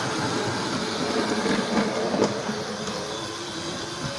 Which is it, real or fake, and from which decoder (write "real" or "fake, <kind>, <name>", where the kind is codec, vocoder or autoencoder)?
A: real